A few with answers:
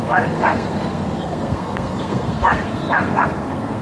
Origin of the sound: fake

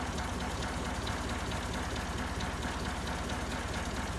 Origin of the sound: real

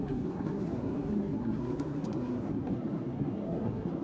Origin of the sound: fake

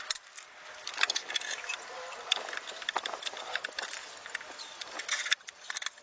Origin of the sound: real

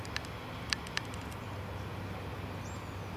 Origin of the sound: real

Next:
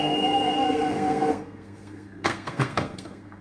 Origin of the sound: fake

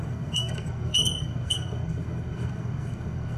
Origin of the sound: fake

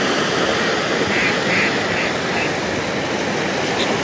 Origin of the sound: real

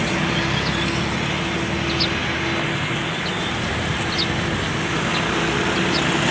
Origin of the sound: real